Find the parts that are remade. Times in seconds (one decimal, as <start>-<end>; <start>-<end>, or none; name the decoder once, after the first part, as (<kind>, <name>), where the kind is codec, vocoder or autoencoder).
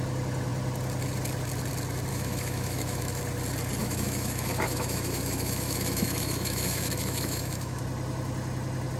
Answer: 2.1-3.2 (autoencoder, DAC-VAE); 3.8-7.8